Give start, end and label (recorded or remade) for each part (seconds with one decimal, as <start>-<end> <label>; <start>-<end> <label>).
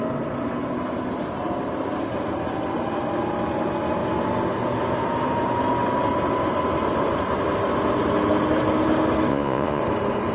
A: 0.0-9.3 recorded; 9.3-9.8 remade; 9.8-10.3 recorded